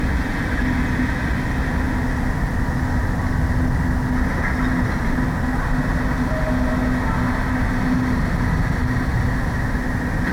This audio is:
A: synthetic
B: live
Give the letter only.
B